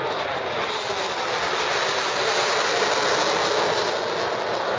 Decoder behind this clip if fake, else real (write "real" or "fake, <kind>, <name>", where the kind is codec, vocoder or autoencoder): real